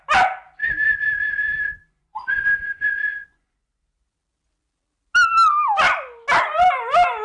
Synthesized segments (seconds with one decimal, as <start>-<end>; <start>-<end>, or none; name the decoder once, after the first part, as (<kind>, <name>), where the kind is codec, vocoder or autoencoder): 0.6-3.8 (vocoder, Vocos)